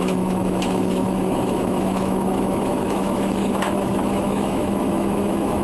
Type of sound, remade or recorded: remade